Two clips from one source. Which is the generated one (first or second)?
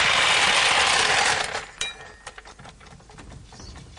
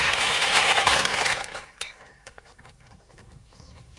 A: second